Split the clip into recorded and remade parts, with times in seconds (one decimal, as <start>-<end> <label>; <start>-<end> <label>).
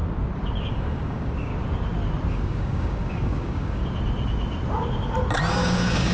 0.0-0.7 recorded; 0.7-1.5 remade; 1.5-2.3 recorded; 2.3-3.8 remade; 3.8-5.5 recorded; 5.5-6.1 remade